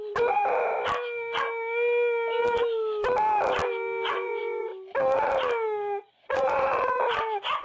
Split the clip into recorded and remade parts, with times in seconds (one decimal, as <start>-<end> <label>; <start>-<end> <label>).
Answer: 0.0-0.4 remade; 0.4-4.1 recorded; 4.1-4.7 remade; 4.7-6.1 recorded; 6.1-7.6 remade